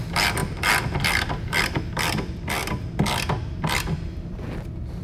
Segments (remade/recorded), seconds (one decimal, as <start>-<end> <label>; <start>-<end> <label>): 0.0-5.0 recorded